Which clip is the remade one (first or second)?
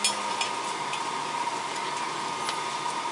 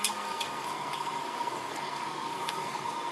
second